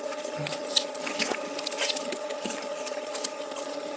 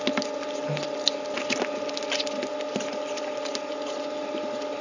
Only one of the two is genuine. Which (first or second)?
second